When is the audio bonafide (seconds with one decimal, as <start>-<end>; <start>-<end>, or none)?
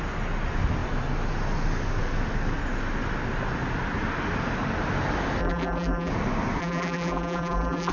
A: 0.0-5.4; 6.1-6.6